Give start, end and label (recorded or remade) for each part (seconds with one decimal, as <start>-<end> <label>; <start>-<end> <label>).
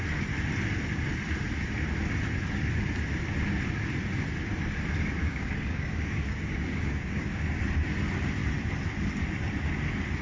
0.0-5.2 recorded; 5.2-7.5 remade; 7.5-10.2 recorded